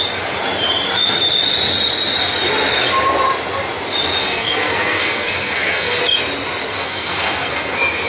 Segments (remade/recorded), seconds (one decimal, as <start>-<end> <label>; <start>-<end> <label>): 0.0-4.2 recorded; 4.2-6.0 remade; 6.0-6.7 recorded; 6.7-8.1 remade